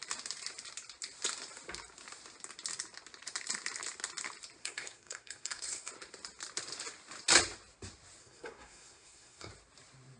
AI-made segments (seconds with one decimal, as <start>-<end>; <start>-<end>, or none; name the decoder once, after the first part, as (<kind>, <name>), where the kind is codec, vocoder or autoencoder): 4.6-5.9 (codec, SNAC); 8.2-9.5